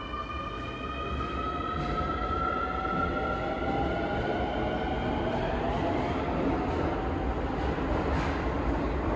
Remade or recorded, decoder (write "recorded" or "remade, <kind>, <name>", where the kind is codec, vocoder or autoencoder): recorded